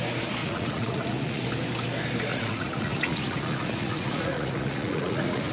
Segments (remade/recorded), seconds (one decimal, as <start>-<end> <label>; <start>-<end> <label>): 0.0-0.4 recorded; 0.4-1.4 remade; 1.4-2.3 recorded; 2.3-5.5 remade